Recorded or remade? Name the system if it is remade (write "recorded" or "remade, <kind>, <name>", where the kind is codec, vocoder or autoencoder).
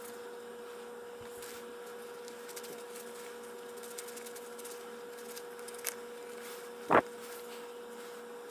recorded